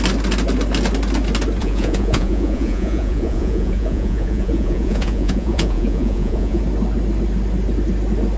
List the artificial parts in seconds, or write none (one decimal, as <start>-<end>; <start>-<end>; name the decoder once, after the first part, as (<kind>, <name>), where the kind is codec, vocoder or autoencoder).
1.6-6.6 (vocoder, Vocos)